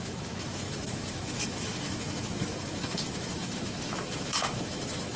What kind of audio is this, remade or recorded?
remade